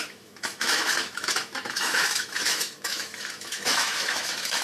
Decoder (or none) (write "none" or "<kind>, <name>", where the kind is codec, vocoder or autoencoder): autoencoder, DAC-VAE